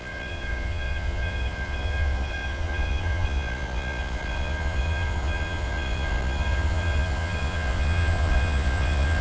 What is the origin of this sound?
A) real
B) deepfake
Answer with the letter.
B